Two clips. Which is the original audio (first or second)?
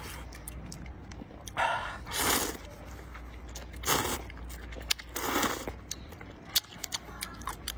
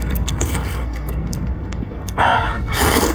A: first